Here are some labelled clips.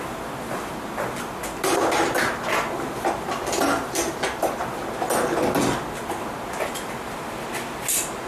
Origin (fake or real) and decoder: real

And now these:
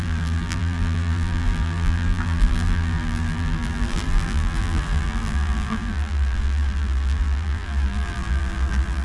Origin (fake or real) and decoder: fake, vocoder, BigVGAN v2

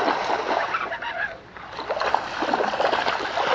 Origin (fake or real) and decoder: real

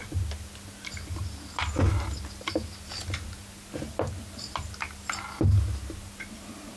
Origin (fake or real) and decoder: real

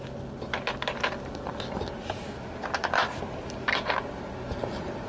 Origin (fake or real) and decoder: fake, vocoder, BigVGAN v2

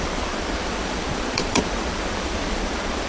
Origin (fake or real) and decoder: fake, vocoder, BigVGAN v2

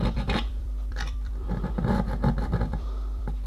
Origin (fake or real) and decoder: fake, vocoder, BigVGAN v2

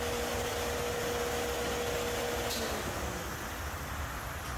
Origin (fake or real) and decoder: real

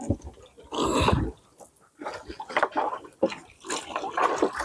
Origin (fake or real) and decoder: real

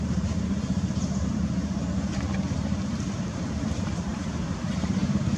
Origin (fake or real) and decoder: fake, vocoder, BigVGAN v2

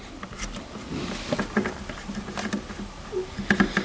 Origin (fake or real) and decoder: fake, vocoder, BigVGAN v2